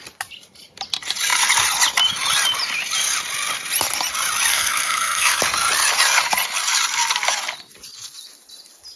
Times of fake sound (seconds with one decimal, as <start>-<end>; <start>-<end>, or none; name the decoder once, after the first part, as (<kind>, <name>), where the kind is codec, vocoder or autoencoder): 4.5-5.4 (codec, SNAC)